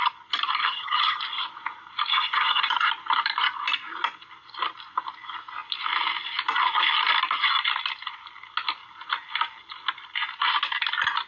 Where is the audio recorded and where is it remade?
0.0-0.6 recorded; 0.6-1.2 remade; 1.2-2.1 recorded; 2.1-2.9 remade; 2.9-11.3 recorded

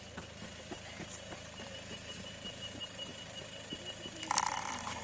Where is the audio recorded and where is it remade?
0.0-5.0 recorded

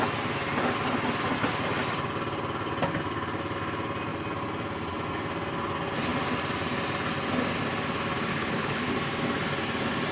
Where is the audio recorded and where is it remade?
0.0-8.3 recorded; 8.3-8.9 remade; 8.9-10.1 recorded

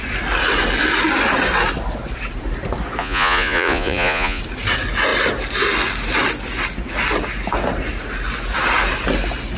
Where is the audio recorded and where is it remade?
0.0-3.0 recorded; 3.0-4.4 remade; 4.4-9.6 recorded

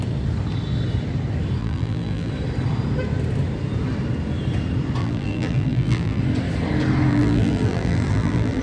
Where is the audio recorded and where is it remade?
0.0-1.6 recorded; 1.6-2.3 remade; 2.3-5.0 recorded; 5.0-6.2 remade; 6.2-7.1 recorded; 7.1-8.6 remade

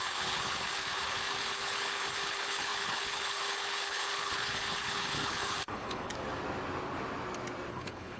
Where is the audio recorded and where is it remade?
0.0-6.1 remade; 6.1-7.7 recorded; 7.7-8.2 remade

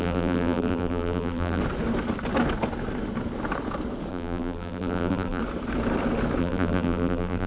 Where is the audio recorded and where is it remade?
0.0-1.6 remade; 1.6-4.1 recorded; 4.1-5.4 remade; 5.4-6.4 recorded; 6.4-7.5 remade

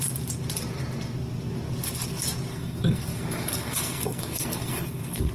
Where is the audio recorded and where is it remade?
0.0-2.5 recorded; 2.5-5.3 remade